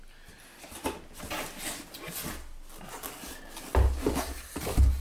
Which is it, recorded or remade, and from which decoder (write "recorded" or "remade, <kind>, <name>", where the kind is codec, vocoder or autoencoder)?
recorded